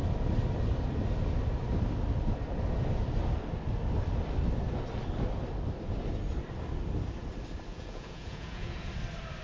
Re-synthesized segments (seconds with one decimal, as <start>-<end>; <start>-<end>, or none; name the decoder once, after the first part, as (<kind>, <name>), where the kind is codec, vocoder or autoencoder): 7.7-8.9 (vocoder, Vocos)